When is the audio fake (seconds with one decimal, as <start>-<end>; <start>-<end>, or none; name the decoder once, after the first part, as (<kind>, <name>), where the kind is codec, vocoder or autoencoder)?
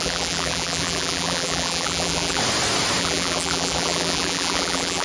0.0-2.4 (vocoder, BigVGAN v2); 3.0-5.0